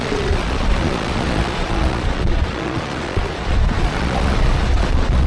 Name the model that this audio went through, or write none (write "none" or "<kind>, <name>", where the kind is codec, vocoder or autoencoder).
vocoder, Vocos